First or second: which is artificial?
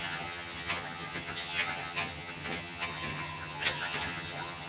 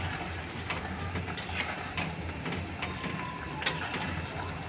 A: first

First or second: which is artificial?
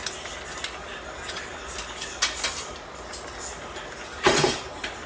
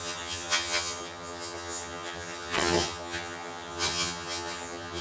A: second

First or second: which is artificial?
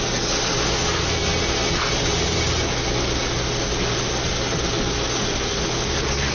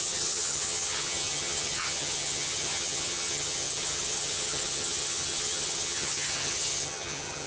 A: second